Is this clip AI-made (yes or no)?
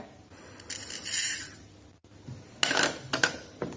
no